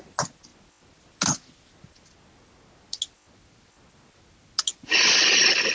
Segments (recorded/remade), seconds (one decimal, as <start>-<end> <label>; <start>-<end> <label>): 0.0-5.7 recorded